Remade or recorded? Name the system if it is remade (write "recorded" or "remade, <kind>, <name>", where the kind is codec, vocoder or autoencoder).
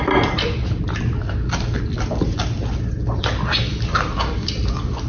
recorded